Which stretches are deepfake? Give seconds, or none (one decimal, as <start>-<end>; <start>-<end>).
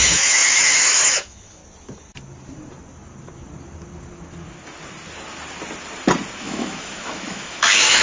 0.0-1.6; 6.4-8.0